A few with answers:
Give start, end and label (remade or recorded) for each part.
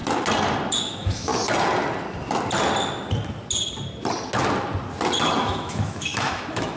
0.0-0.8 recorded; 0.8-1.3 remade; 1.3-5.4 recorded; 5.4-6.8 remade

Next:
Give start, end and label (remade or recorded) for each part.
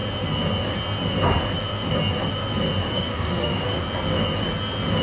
0.0-2.9 recorded; 2.9-3.8 remade; 3.8-5.0 recorded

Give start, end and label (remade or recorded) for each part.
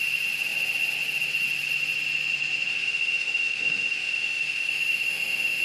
0.0-2.7 recorded; 2.7-5.6 remade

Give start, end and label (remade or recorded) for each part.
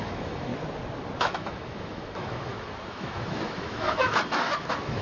0.0-0.5 remade; 0.5-1.2 recorded; 1.2-5.0 remade